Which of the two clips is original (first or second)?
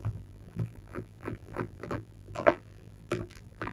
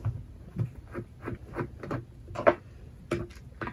second